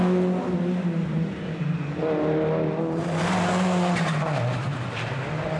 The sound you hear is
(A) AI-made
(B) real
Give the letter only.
B